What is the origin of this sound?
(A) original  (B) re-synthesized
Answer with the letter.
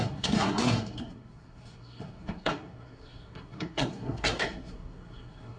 B